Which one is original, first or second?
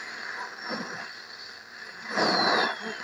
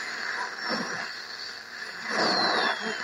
second